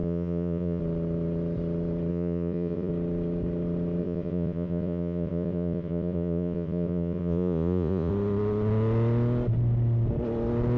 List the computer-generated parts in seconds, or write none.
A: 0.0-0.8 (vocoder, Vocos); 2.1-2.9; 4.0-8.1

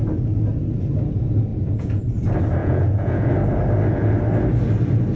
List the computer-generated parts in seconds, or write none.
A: 1.5-2.0 (vocoder, Vocos); 2.6-3.3

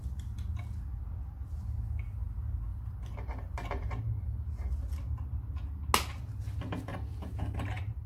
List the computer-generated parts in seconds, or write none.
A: 2.7-4.2 (vocoder, BigVGAN v2); 6.9-8.1

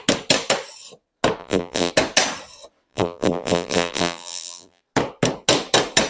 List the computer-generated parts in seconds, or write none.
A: 1.4-1.9 (vocoder, BigVGAN v2); 2.9-4.8

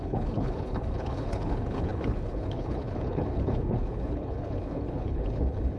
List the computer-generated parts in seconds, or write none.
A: 0.0-5.8 (codec, HILCodec)

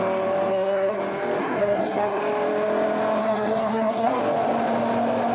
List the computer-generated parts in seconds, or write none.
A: 0.5-1.0 (codec, SNAC); 1.4-2.2; 3.2-4.2

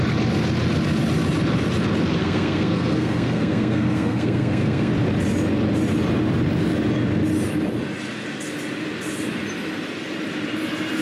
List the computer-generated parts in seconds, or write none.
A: 2.2-4.9 (codec, SNAC)